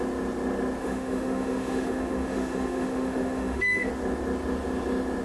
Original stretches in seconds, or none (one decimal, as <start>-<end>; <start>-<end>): 0.0-0.8; 3.9-5.2